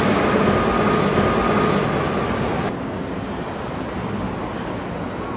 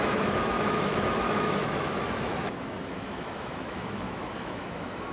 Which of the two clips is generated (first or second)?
second